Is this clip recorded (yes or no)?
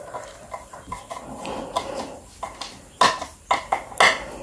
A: yes